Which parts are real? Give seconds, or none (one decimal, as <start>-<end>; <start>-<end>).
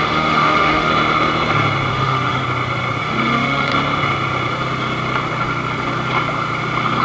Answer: 0.9-1.9; 2.4-3.0; 3.7-7.0